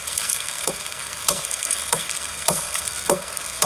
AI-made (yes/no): yes